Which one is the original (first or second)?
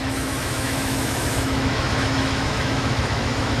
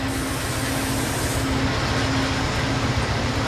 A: second